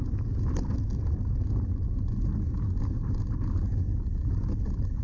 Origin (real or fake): real